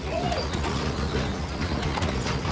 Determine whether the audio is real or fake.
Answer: fake